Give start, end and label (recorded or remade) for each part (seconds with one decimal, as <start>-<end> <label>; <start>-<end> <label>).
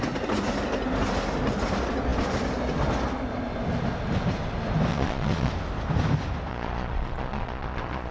0.0-4.9 recorded; 4.9-5.5 remade; 5.5-6.5 recorded; 6.5-8.1 remade